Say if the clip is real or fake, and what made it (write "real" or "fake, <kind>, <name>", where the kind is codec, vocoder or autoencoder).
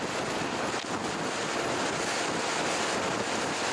real